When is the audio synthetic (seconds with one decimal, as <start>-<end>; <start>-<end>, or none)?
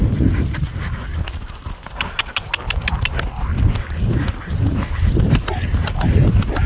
none